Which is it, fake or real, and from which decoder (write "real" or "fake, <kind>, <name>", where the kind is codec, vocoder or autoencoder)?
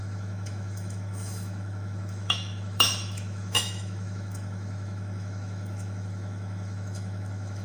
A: fake, autoencoder, DAC-VAE